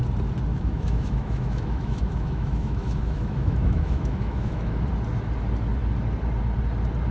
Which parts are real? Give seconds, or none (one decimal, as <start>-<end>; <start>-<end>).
0.0-0.5; 4.8-7.1